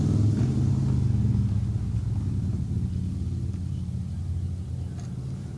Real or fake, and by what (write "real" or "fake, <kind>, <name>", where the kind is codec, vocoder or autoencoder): real